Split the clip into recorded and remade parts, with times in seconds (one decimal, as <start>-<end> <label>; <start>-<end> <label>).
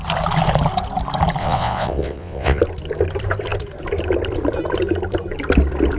0.0-1.4 recorded; 1.4-2.6 remade; 2.6-6.0 recorded